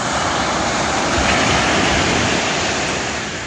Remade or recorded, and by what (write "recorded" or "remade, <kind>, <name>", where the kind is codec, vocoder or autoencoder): recorded